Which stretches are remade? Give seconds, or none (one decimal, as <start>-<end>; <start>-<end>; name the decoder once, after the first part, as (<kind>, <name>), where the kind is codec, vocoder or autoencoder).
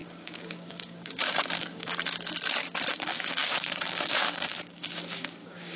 0.0-1.9 (codec, DAC); 2.9-5.8